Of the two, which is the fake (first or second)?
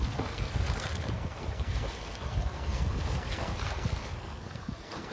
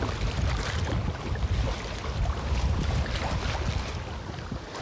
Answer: first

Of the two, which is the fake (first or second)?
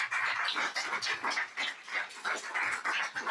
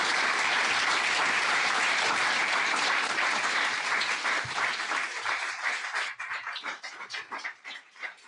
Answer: second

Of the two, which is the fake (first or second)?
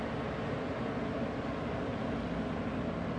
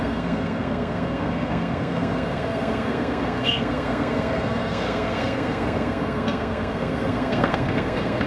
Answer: second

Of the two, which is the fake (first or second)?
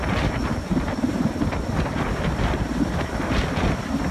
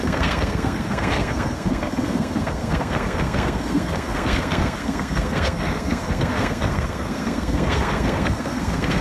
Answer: second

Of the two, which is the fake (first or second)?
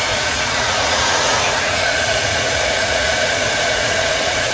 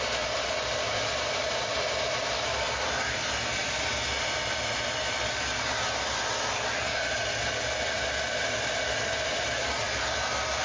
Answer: first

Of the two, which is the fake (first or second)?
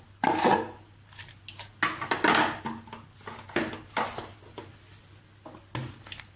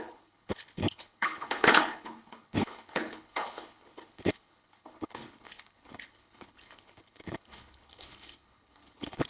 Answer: second